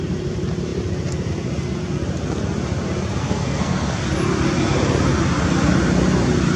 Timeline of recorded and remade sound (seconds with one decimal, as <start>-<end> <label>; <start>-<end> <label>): 0.0-3.2 recorded; 3.2-4.0 remade; 4.0-6.6 recorded